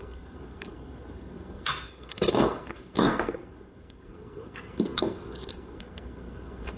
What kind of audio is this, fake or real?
fake